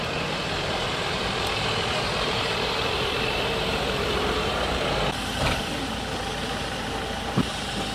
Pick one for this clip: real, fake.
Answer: fake